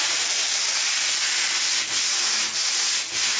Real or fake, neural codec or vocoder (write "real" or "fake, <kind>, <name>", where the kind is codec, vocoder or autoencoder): real